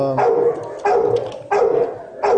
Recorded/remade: recorded